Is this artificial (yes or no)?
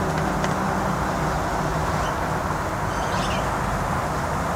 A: no